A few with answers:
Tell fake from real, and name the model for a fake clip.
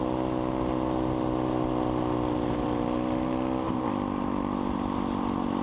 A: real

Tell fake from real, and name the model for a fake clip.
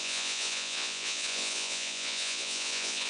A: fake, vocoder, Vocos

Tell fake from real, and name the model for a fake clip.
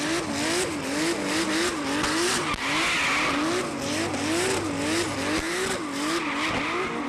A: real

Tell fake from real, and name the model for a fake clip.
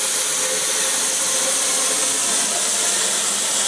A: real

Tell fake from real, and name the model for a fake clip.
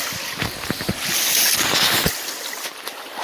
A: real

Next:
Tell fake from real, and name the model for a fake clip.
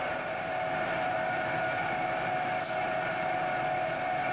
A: real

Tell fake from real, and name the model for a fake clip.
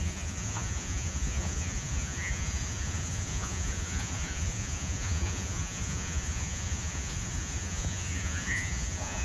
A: fake, vocoder, Vocos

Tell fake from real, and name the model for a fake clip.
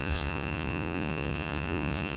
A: fake, vocoder, Vocos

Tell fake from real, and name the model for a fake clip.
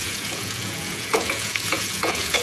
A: fake, vocoder, Vocos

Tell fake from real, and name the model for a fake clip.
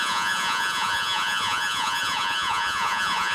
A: fake, vocoder, Vocos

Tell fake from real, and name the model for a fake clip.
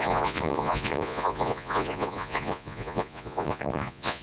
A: fake, vocoder, Vocos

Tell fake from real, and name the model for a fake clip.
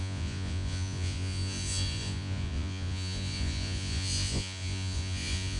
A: fake, vocoder, Vocos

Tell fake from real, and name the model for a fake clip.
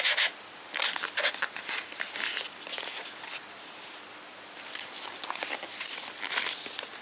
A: real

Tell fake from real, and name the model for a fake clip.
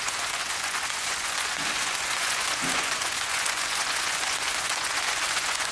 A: fake, vocoder, Vocos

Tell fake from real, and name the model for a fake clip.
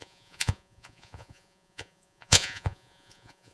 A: fake, vocoder, Vocos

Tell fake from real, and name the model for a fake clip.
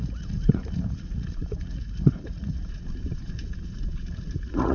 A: fake, vocoder, Vocos